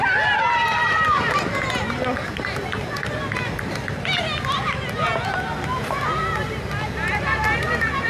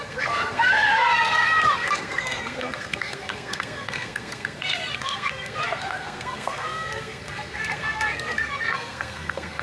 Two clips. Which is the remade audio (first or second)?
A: second